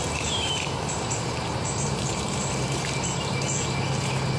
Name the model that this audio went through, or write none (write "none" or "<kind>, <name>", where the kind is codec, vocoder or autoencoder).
vocoder, BigVGAN v2